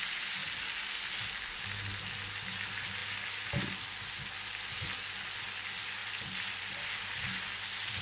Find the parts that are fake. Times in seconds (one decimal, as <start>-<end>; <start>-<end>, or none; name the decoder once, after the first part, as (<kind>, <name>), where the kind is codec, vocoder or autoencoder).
none